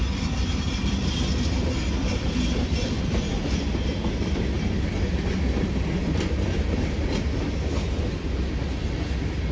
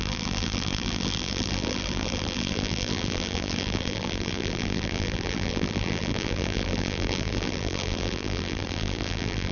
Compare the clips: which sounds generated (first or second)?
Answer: second